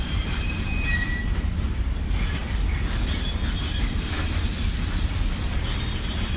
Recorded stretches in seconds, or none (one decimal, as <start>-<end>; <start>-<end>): 0.9-1.5; 2.4-6.4